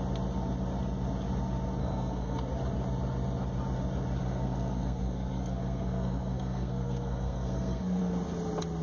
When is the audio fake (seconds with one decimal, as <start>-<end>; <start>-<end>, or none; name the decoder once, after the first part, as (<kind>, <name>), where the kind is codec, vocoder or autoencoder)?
1.8-2.4 (codec, SNAC); 4.2-8.0